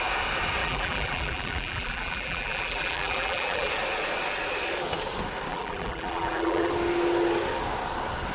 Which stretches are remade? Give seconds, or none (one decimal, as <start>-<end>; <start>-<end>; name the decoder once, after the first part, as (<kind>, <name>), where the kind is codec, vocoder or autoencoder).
0.6-3.7 (vocoder, BigVGAN v2); 5.5-6.7